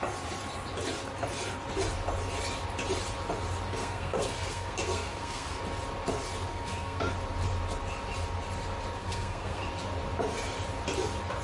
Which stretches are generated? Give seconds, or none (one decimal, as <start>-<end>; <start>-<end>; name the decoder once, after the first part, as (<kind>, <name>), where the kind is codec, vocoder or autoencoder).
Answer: 3.8-5.6 (codec, SNAC); 6.5-7.1; 9.0-9.7

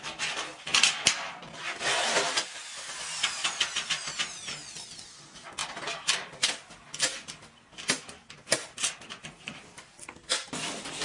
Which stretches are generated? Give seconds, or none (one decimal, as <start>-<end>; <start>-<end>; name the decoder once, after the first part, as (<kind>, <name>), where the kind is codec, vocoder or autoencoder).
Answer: none

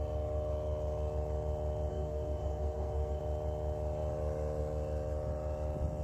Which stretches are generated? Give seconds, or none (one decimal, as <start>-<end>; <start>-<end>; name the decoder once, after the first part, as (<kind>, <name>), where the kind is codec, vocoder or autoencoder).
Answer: 1.9-3.2 (codec, SNAC)

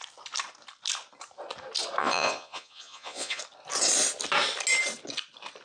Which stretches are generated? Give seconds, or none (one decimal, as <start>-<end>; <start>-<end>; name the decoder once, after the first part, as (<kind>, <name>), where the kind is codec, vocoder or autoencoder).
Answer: 2.0-3.4 (vocoder, Vocos)

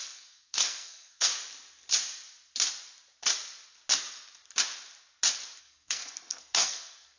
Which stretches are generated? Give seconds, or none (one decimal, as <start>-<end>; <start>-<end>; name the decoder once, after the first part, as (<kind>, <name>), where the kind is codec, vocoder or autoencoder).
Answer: 0.0-1.3 (codec, SNAC); 5.6-7.2

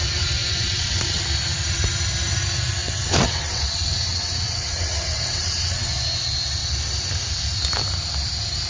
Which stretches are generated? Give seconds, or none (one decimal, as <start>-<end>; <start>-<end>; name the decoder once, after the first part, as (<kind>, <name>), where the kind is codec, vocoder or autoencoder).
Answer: 0.4-1.2 (vocoder, WaveNeXt); 2.8-5.9

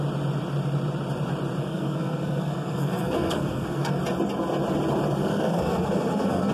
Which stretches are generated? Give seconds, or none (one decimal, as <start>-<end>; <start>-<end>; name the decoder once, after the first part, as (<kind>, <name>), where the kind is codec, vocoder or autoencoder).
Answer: 1.6-4.0 (codec, SNAC); 5.2-6.5

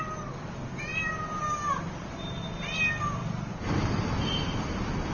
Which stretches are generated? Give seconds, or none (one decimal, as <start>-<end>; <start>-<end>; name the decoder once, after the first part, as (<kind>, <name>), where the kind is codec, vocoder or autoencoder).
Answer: none